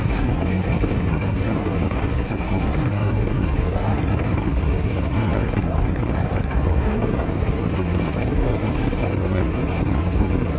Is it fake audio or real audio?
fake